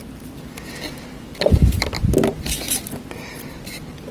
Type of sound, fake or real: real